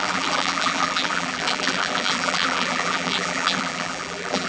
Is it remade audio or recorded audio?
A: remade